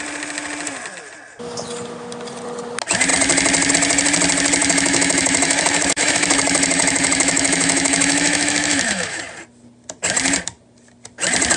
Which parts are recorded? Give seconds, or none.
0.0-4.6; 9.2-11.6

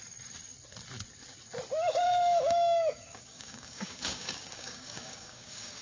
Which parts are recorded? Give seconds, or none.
0.0-1.9

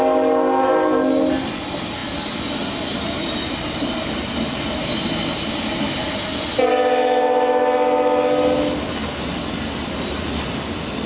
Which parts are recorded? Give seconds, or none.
0.0-11.1